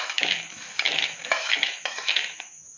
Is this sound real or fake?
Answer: fake